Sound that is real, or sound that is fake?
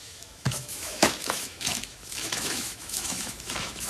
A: fake